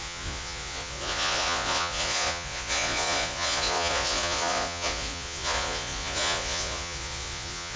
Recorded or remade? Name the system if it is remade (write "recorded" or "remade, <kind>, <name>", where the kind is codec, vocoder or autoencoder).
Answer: remade, vocoder, Vocos